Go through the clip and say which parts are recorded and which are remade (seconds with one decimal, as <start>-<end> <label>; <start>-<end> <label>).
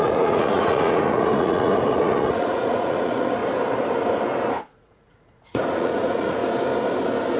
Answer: 0.0-3.4 remade; 3.4-4.5 recorded; 4.5-6.4 remade; 6.4-7.4 recorded